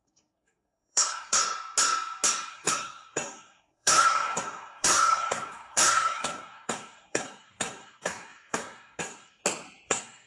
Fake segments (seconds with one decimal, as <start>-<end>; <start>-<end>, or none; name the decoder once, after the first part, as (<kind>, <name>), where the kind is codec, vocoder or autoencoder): 0.0-1.4 (codec, SNAC); 2.5-9.4; 9.9-10.3